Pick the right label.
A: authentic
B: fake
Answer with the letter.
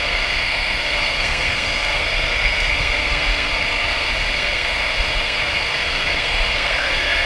B